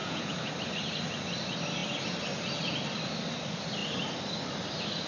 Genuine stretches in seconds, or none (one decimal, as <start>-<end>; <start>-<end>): 0.5-5.1